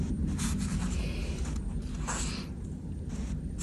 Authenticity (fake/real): real